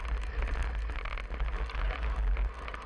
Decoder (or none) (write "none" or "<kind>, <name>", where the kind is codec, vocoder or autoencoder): none